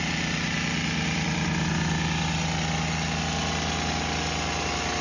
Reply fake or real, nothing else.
real